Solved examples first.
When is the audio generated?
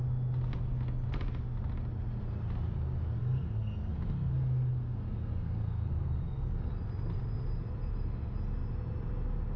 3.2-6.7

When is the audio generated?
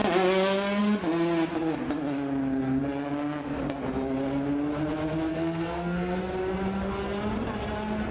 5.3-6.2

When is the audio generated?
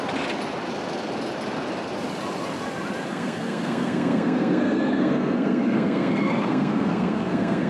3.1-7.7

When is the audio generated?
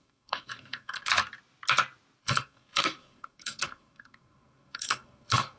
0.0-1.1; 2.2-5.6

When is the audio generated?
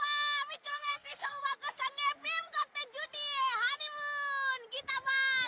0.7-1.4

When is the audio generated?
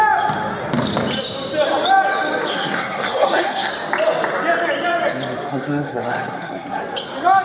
2.5-3.7; 5.5-6.8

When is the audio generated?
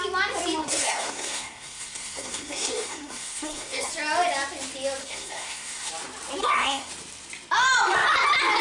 0.6-3.9; 5.0-5.9; 6.4-6.9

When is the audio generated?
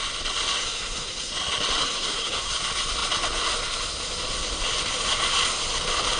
0.6-1.3; 1.8-2.5